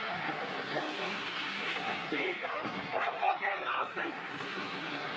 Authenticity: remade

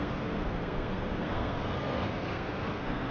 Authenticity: remade